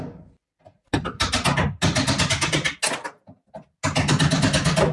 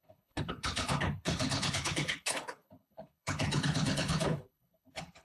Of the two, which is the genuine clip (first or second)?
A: first